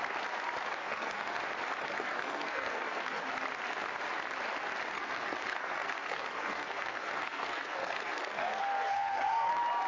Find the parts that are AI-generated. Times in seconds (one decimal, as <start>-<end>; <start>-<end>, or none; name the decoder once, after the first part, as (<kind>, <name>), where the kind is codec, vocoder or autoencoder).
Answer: 0.8-1.4 (codec, SNAC); 1.8-3.2; 4.9-9.5